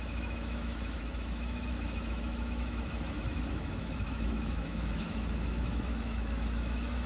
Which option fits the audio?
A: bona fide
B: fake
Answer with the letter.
B